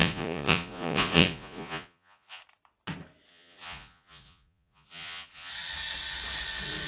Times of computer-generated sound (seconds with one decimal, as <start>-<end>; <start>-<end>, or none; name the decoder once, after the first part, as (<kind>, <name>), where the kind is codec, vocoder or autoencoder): 0.0-2.4 (vocoder, Vocos); 3.3-5.5